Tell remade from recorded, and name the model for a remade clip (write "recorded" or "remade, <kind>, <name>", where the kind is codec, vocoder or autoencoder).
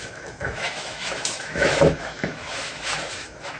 remade, autoencoder, DAC-VAE